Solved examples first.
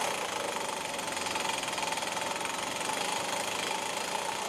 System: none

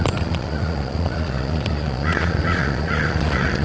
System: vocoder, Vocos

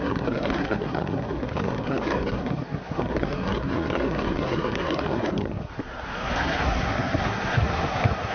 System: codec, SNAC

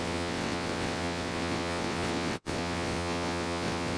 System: vocoder, WaveNeXt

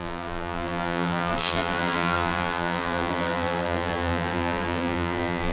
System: vocoder, BigVGAN v2